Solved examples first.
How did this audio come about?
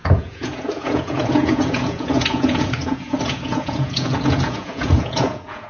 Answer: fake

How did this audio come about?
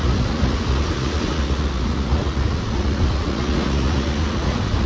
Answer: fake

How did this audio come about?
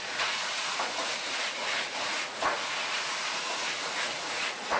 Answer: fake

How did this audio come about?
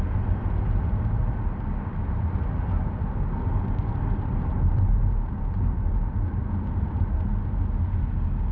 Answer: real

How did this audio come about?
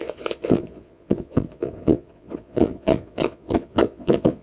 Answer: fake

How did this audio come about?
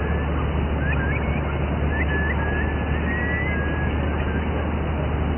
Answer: real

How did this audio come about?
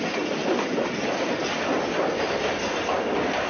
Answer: real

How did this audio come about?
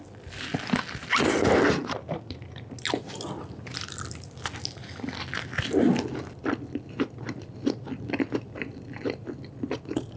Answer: real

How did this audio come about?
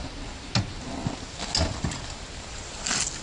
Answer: real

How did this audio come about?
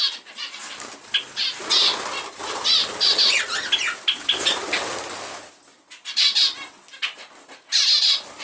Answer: real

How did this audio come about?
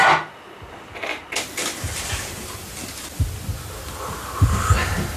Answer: real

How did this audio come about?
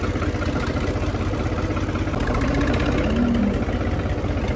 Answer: real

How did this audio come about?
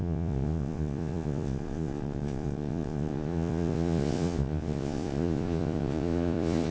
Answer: fake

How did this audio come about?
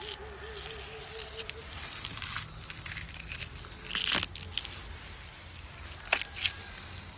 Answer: real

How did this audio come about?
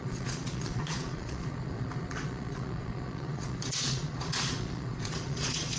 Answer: fake